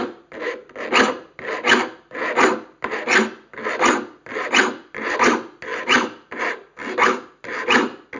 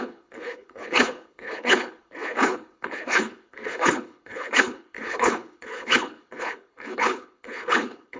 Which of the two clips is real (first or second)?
first